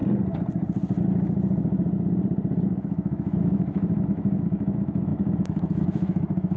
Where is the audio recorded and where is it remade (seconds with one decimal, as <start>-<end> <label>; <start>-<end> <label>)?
0.0-2.7 recorded; 2.7-6.6 remade